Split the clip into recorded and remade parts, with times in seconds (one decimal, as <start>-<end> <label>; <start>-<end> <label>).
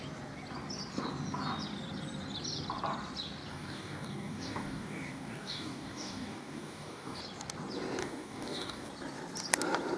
0.0-3.5 recorded; 3.5-7.2 remade; 7.2-8.0 recorded; 8.0-8.9 remade; 8.9-10.0 recorded